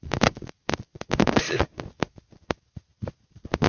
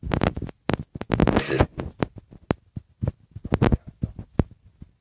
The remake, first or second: first